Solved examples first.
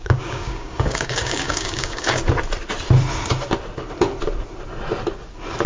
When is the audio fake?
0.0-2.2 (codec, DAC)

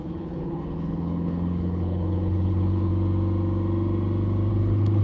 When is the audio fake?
0.0-2.9 (codec, HILCodec); 4.5-5.0

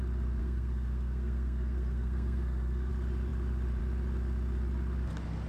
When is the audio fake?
0.4-2.9 (codec, SNAC)